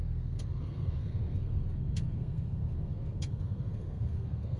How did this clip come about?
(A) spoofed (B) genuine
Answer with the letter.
A